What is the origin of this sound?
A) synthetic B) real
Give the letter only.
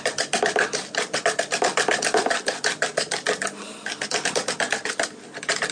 B